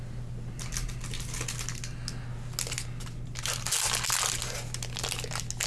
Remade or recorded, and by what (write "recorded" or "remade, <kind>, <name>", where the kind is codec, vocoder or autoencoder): recorded